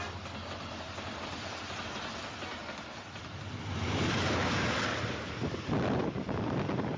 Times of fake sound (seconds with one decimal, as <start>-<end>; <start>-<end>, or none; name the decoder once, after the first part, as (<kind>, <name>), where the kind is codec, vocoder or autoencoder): 2.6-7.0 (vocoder, BigVGAN v2)